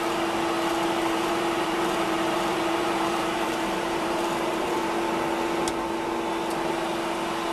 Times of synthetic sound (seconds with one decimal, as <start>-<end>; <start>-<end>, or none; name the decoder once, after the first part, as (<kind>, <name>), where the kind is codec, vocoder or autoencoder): 1.0-5.1 (vocoder, BigVGAN v2)